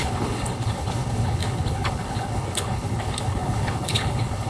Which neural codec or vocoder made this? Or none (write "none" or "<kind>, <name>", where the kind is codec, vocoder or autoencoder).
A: codec, HILCodec